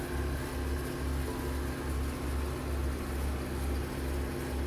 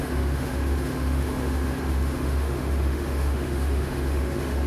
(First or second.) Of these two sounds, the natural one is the first